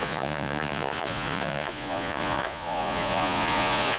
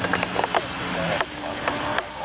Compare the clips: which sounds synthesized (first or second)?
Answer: first